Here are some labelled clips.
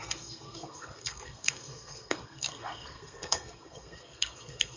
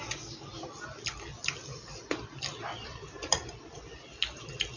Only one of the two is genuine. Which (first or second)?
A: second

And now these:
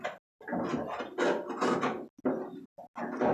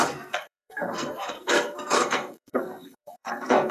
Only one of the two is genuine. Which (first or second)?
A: first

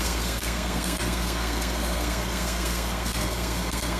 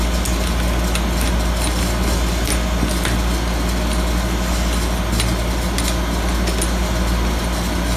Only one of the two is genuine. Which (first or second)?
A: second